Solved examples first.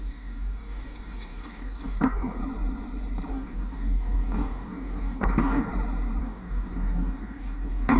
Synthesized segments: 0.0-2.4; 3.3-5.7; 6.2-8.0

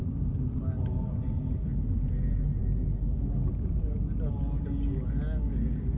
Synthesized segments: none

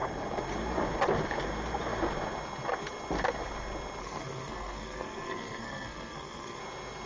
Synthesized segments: 4.0-6.6